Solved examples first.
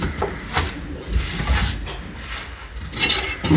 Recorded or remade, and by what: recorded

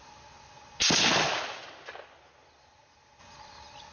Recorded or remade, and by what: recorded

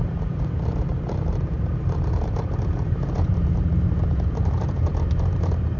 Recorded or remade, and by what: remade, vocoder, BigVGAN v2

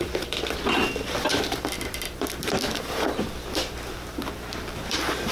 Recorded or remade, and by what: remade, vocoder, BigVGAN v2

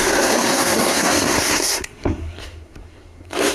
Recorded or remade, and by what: remade, codec, SNAC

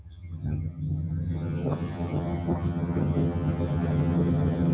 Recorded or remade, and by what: remade, vocoder, HiFi-GAN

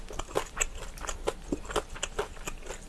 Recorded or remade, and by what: recorded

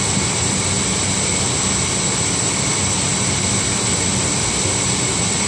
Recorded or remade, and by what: recorded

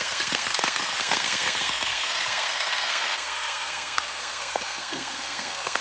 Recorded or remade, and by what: remade, codec, SNAC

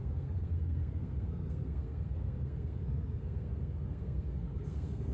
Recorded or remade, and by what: remade, codec, SNAC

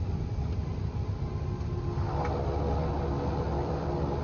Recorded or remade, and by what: recorded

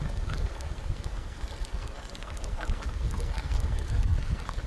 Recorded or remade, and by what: remade, codec, SNAC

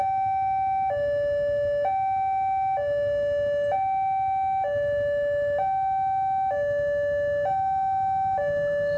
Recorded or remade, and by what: recorded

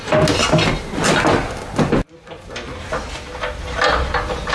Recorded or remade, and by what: recorded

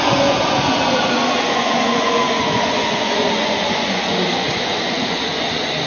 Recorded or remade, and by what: remade, vocoder, Vocos